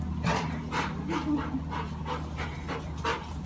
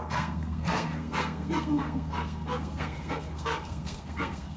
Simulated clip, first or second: second